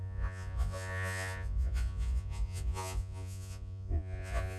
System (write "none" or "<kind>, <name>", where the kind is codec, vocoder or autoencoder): vocoder, Vocos